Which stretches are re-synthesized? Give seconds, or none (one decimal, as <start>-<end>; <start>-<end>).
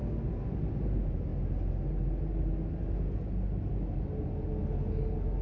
none